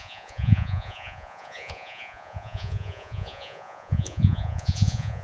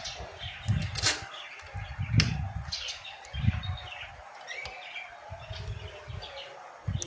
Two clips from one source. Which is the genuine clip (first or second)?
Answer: second